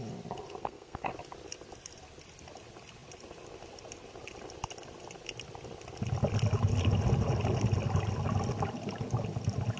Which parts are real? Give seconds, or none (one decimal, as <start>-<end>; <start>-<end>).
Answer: 0.0-0.6; 1.1-9.8